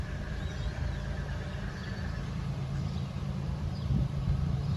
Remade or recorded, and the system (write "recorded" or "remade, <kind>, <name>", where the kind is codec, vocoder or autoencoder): remade, vocoder, BigVGAN v2